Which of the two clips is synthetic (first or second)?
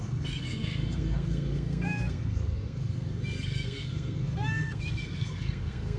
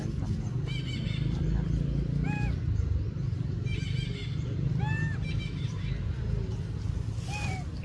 first